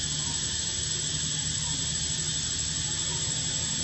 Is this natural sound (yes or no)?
yes